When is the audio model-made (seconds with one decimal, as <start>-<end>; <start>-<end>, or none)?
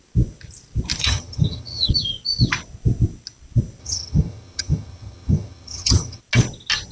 1.0-1.9; 3.8-6.2